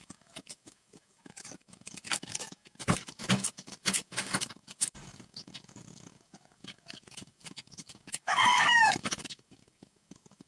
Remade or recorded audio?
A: remade